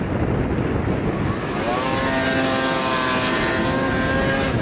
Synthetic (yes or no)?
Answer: no